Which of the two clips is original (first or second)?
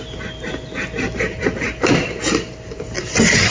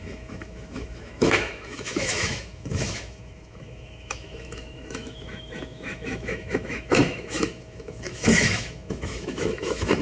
first